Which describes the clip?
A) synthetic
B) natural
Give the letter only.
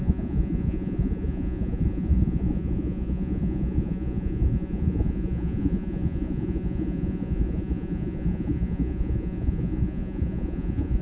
A